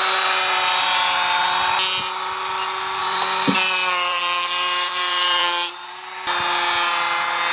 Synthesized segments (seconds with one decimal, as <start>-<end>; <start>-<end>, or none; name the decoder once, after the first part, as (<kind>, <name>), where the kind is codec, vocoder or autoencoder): 3.0-5.9 (vocoder, BigVGAN v2)